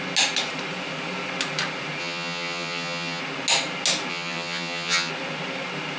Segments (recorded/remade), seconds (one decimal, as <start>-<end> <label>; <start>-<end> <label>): 0.0-2.0 recorded; 2.0-3.2 remade; 3.2-4.1 recorded; 4.1-5.1 remade; 5.1-6.0 recorded